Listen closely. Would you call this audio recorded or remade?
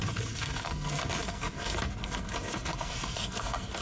remade